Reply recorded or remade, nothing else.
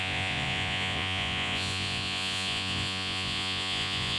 remade